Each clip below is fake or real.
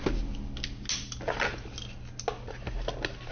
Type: real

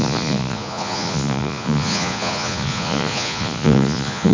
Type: fake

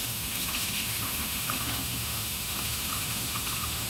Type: fake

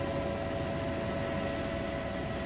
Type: real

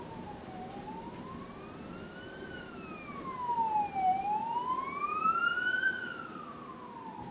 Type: real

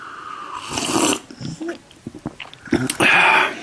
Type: real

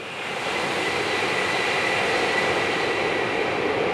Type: real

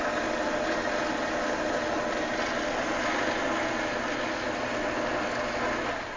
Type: real